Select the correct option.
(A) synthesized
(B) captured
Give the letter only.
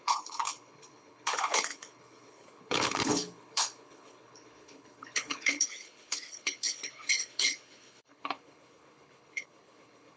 A